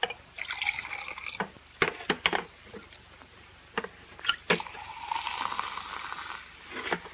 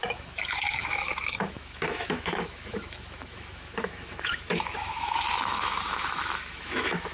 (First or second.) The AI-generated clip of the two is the second